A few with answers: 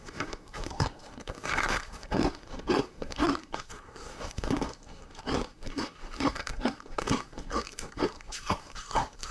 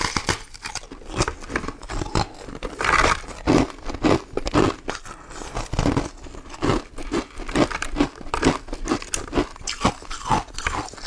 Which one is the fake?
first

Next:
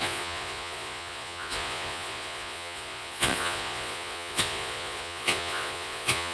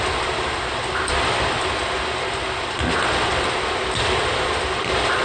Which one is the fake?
first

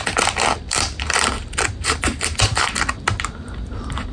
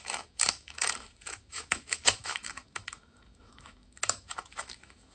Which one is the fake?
second